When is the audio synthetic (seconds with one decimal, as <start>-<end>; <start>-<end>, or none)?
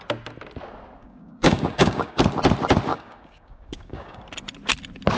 1.0-2.2; 2.9-4.2